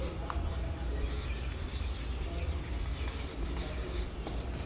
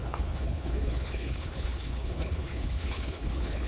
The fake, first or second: second